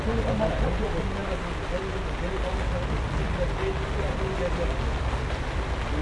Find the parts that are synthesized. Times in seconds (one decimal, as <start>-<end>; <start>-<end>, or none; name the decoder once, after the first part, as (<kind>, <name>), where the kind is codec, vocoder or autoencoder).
none

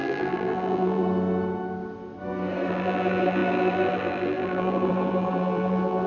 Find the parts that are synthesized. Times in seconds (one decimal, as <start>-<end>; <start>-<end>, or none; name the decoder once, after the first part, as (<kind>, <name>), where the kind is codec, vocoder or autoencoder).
0.0-1.0 (vocoder, BigVGAN v2); 2.7-6.1

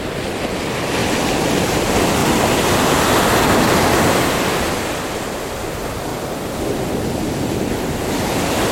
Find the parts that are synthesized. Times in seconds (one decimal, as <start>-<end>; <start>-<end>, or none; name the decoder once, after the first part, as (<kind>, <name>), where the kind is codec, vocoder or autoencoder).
1.0-1.8 (vocoder, BigVGAN v2); 6.1-7.7

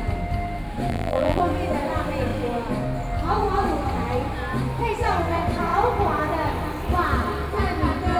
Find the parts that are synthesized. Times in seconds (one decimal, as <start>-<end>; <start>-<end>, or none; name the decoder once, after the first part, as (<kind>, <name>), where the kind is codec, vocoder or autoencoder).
0.9-1.4 (vocoder, BigVGAN v2)